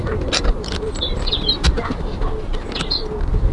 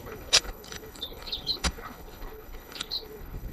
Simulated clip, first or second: second